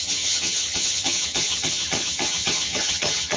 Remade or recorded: remade